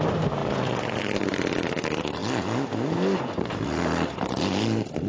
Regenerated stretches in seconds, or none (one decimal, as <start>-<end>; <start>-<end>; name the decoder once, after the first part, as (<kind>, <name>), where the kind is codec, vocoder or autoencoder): none